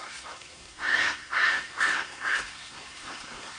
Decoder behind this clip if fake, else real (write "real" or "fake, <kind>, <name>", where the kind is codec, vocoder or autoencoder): fake, codec, SNAC